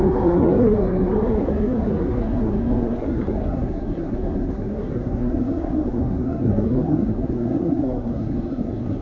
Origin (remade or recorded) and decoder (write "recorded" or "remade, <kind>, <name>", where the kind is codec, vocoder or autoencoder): remade, codec, SNAC